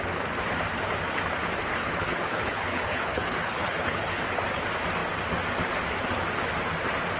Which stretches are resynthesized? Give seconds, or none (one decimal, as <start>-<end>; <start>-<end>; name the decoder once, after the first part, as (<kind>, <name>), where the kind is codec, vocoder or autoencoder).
1.7-4.2 (codec, HILCodec)